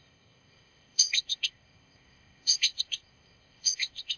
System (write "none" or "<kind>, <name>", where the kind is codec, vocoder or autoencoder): codec, ZipCodec